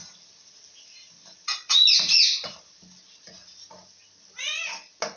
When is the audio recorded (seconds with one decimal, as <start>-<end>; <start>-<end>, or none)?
0.0-5.2